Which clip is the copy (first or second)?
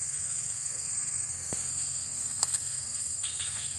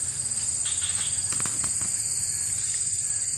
first